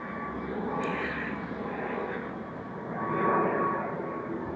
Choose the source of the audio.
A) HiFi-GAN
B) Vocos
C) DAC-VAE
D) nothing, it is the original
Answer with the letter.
D